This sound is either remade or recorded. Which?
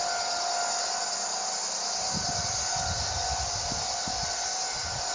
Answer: recorded